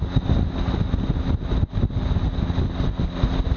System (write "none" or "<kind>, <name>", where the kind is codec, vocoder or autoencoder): none